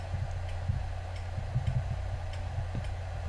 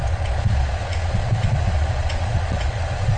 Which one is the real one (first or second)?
first